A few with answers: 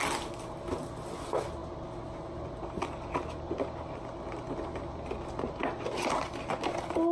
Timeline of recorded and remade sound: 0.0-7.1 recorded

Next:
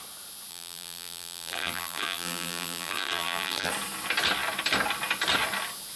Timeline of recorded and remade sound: 0.0-0.5 recorded; 0.5-3.7 remade; 3.7-6.0 recorded

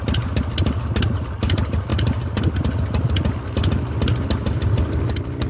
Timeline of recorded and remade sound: 0.0-1.9 recorded; 1.9-2.5 remade; 2.5-4.4 recorded; 4.4-5.0 remade; 5.0-5.5 recorded

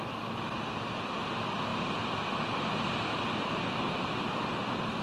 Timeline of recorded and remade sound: 0.0-1.7 recorded; 1.7-5.0 remade

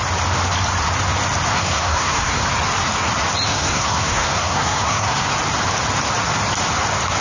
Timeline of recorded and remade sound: 0.0-1.5 recorded; 1.5-2.4 remade; 2.4-3.5 recorded; 3.5-5.2 remade; 5.2-7.2 recorded

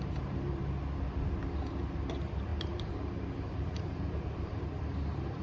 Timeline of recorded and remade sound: 0.0-0.6 remade; 0.6-2.1 recorded; 2.1-5.4 remade

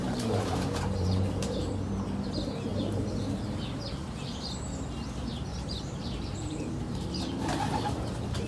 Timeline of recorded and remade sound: 0.0-1.7 remade; 1.7-2.7 recorded; 2.7-3.9 remade; 3.9-5.5 recorded; 5.5-7.4 remade; 7.4-8.5 recorded

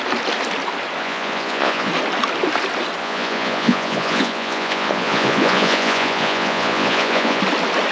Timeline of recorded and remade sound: 0.0-1.0 recorded; 1.0-1.9 remade; 1.9-3.0 recorded; 3.0-7.4 remade; 7.4-7.9 recorded